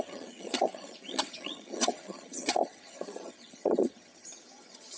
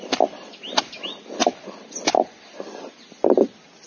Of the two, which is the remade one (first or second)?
first